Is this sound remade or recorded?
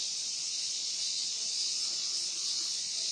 remade